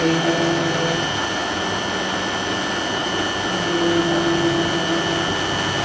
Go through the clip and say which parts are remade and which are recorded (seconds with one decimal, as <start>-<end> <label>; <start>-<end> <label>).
0.0-5.8 recorded